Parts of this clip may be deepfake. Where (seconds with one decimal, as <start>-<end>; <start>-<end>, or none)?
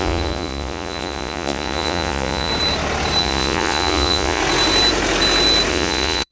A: 0.0-2.5; 3.2-4.4; 5.7-6.3